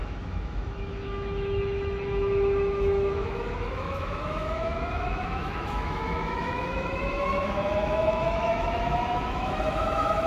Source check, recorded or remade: remade